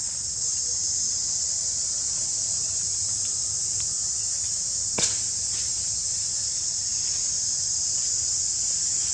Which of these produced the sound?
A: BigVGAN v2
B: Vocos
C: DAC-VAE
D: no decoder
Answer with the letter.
D